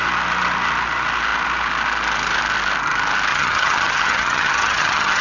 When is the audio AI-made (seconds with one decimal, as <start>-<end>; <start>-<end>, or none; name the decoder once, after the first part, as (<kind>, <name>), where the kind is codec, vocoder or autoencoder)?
3.3-5.2 (vocoder, HiFi-GAN)